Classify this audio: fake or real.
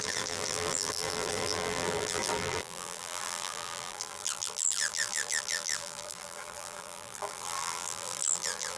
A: fake